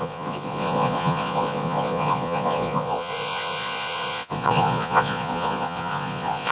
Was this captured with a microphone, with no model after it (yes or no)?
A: no